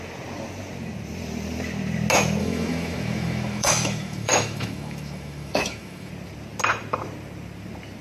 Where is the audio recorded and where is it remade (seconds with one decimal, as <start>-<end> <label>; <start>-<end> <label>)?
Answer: 0.0-2.4 recorded; 2.4-6.1 remade; 6.1-8.0 recorded